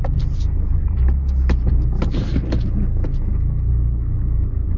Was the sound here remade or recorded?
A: recorded